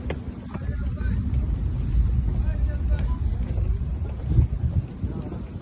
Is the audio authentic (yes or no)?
yes